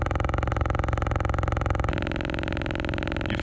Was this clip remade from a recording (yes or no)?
no